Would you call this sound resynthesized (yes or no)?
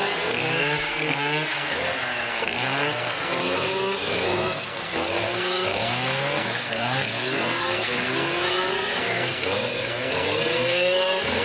yes